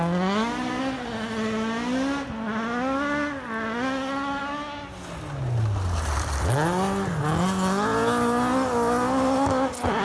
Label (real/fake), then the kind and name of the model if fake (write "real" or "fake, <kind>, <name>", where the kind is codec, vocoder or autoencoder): real